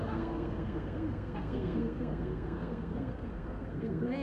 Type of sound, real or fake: fake